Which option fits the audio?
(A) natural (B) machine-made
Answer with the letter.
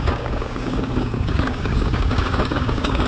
B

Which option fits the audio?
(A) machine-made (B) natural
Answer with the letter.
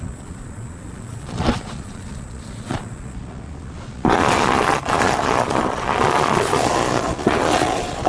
A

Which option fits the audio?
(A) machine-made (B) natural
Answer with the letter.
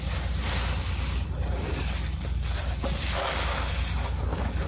B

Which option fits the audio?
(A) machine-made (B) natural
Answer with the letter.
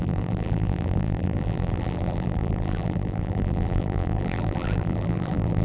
A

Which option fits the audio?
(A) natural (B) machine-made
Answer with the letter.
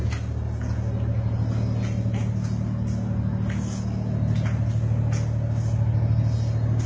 A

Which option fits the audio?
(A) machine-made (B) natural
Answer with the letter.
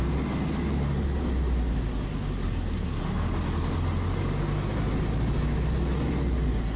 B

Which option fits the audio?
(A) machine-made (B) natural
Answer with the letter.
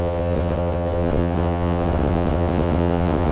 A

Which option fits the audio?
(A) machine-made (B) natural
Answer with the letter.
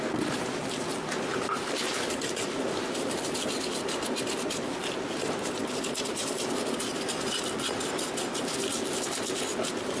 B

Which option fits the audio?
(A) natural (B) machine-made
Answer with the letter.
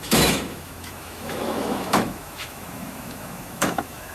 B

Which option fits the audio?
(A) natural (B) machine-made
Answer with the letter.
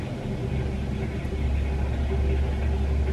A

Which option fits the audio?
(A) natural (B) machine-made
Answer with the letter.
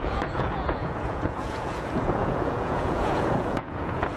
B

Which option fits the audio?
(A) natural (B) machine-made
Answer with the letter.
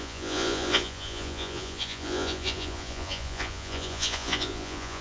B